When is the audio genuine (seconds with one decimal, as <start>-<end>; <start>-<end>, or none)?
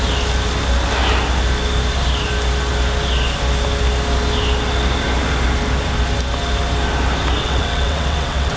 0.0-7.4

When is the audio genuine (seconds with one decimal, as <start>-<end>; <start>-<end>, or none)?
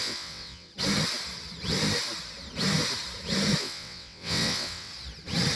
0.7-3.6; 4.9-5.6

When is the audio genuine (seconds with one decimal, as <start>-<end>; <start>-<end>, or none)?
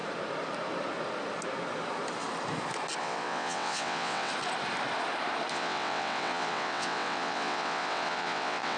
0.0-3.0; 4.3-5.5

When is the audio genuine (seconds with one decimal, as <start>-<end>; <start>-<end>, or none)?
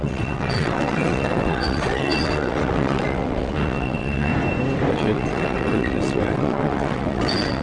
4.3-4.9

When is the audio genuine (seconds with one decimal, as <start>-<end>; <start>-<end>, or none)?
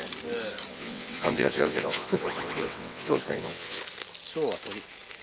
0.0-0.7; 3.8-5.2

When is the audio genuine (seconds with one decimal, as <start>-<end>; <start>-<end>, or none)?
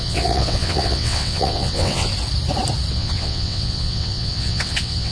2.1-2.9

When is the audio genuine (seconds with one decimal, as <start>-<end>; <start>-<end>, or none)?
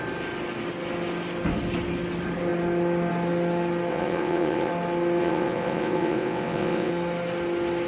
0.0-3.9; 4.7-5.2; 6.9-7.9